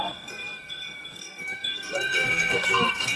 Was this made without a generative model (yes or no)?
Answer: no